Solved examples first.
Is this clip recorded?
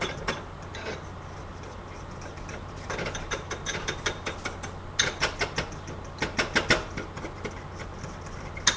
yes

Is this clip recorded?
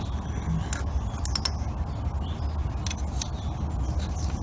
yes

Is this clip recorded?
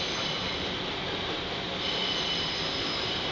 yes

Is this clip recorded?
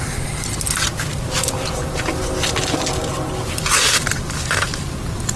yes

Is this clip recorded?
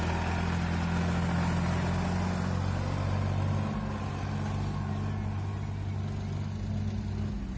yes